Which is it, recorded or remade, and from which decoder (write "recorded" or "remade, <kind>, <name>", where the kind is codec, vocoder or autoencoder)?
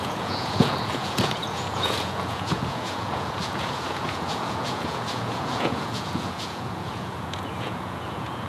remade, vocoder, Vocos